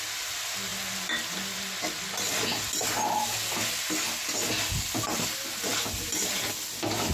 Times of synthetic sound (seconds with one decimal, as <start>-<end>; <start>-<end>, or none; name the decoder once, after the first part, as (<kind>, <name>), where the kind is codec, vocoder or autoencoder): none